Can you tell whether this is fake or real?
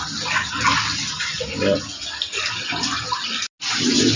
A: real